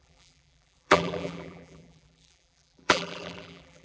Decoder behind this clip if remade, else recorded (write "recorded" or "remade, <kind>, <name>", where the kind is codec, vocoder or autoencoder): remade, vocoder, BigVGAN v2